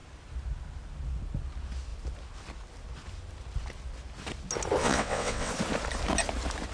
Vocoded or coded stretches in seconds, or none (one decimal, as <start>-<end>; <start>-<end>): 4.8-5.5